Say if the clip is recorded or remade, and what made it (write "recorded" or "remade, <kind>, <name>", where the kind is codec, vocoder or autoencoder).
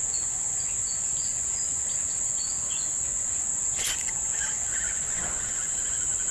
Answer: remade, vocoder, Vocos